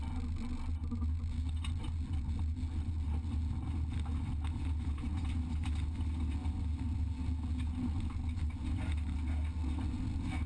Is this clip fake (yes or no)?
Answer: no